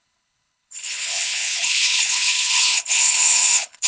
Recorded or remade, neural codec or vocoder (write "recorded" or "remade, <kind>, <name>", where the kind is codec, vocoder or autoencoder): remade, codec, HILCodec